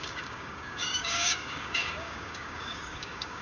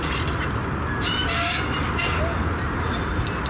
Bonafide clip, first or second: second